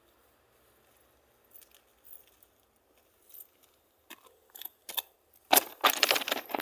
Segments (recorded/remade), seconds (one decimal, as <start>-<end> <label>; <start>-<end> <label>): 0.0-6.6 recorded